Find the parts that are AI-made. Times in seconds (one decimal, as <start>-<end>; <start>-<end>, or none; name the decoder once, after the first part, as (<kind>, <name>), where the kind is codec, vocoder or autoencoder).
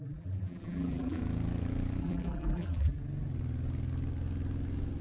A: 0.0-1.2 (vocoder, BigVGAN v2); 2.0-3.0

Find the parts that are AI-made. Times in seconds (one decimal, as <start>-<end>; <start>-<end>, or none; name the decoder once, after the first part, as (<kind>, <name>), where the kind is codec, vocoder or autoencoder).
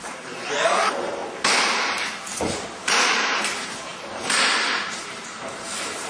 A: 0.0-1.2 (vocoder, BigVGAN v2); 2.2-6.1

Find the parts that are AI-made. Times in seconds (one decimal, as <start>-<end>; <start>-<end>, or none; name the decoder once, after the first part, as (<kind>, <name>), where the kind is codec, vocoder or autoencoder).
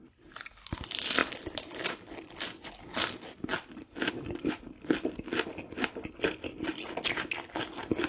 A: 1.2-2.7 (vocoder, BigVGAN v2)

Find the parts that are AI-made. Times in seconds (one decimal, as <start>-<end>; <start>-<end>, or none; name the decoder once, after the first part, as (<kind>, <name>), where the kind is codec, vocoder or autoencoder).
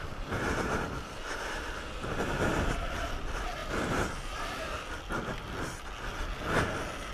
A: 0.0-5.3 (vocoder, BigVGAN v2)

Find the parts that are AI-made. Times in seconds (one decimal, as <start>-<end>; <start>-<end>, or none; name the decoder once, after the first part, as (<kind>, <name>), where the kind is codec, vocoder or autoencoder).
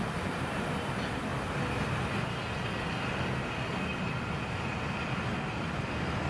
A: 0.0-1.3 (vocoder, BigVGAN v2); 4.8-6.3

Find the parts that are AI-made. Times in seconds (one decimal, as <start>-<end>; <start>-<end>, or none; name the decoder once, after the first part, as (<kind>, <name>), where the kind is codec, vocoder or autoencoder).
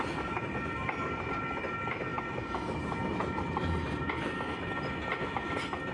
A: none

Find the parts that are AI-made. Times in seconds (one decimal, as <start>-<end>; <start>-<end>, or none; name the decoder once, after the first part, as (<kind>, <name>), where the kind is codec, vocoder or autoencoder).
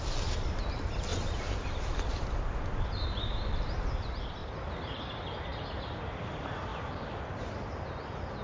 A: 1.1-2.6 (vocoder, BigVGAN v2); 4.4-5.0; 5.5-6.0